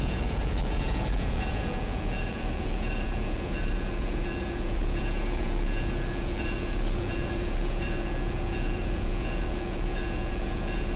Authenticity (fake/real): fake